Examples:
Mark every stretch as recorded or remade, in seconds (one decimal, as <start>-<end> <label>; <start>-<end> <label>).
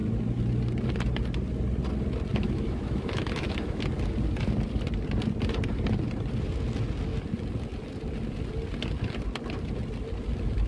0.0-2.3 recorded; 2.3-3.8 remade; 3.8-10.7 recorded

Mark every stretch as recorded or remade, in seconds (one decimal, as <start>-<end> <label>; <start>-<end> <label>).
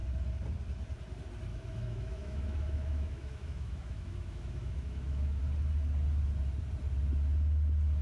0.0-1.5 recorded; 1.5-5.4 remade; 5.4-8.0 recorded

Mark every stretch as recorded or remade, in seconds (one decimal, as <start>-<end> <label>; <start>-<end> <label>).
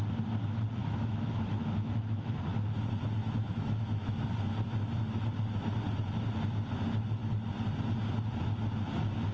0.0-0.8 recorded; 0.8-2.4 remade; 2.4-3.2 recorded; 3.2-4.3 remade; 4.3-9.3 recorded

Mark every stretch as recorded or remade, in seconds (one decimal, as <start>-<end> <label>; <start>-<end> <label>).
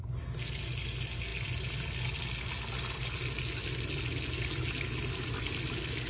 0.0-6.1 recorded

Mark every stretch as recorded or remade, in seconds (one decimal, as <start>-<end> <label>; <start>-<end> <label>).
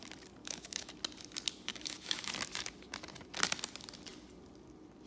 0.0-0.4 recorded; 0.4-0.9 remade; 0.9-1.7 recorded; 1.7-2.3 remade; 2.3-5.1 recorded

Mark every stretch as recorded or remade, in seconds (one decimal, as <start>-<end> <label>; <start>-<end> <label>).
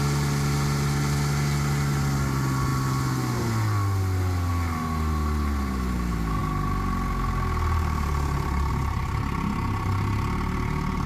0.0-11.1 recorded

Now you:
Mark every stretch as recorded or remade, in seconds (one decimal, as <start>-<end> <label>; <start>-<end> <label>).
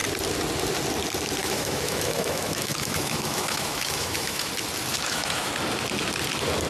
0.0-1.4 recorded; 1.4-4.5 remade; 4.5-4.9 recorded; 4.9-5.5 remade; 5.5-6.7 recorded